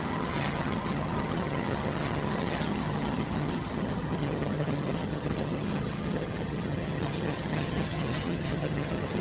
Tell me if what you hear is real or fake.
fake